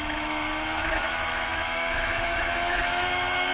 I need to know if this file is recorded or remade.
remade